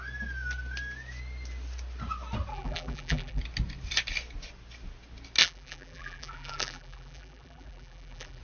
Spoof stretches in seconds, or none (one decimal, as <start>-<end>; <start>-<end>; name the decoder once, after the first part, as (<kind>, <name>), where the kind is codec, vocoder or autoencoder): 2.5-3.4 (vocoder, BigVGAN v2); 5.4-8.4